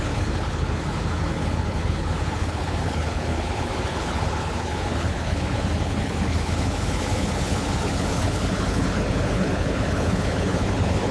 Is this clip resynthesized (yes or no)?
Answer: yes